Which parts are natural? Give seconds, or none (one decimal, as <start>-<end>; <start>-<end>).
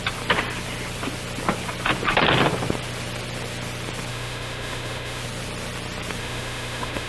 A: 0.0-4.1; 5.2-6.2